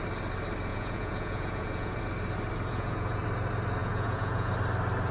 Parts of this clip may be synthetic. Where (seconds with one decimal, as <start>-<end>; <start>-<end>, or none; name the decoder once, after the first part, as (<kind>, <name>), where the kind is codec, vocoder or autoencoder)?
0.7-2.0 (vocoder, Vocos); 2.7-3.2; 3.8-4.5